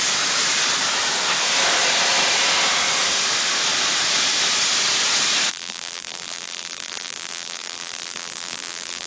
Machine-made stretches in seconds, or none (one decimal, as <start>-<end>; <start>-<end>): 5.5-9.1

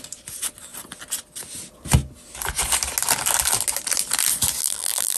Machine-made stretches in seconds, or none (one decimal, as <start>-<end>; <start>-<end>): 4.6-5.2

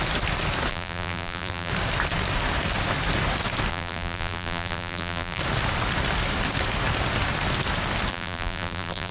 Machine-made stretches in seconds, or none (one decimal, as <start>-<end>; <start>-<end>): 0.7-1.7; 3.7-5.4; 8.1-9.1

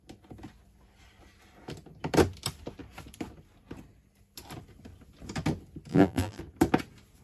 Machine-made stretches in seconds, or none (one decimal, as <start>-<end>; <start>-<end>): 5.9-6.4

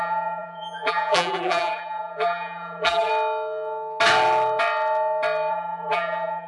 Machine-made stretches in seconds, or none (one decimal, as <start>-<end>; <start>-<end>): 0.0-3.1; 5.5-6.5

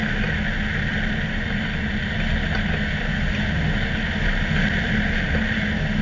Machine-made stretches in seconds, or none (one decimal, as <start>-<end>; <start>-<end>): none